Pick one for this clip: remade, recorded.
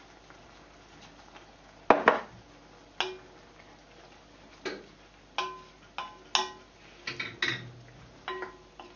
recorded